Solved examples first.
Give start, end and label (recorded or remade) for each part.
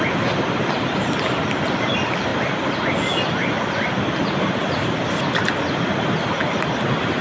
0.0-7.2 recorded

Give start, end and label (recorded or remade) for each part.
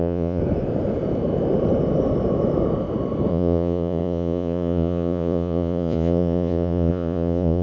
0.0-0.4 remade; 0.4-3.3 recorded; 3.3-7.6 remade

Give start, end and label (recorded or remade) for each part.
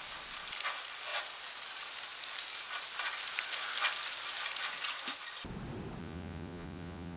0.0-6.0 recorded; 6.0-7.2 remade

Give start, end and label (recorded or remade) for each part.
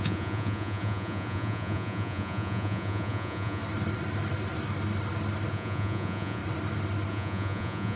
0.0-3.6 remade; 3.6-5.5 recorded; 5.5-6.4 remade; 6.4-7.1 recorded; 7.1-8.0 remade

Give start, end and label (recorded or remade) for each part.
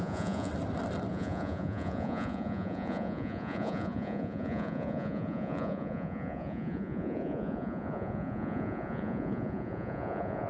0.0-0.5 remade; 0.5-1.1 recorded; 1.1-10.5 remade